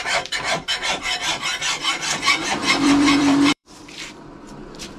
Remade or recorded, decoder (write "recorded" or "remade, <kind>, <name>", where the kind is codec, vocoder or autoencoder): remade, vocoder, BigVGAN v2